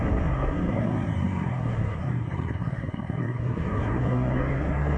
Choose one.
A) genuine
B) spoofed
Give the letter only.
B